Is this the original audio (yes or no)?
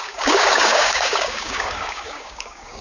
no